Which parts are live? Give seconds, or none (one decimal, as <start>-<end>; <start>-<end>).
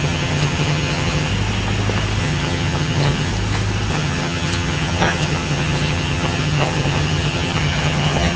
1.3-2.2; 3.3-3.9